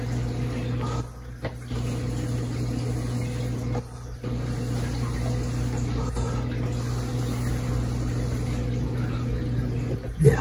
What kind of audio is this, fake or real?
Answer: real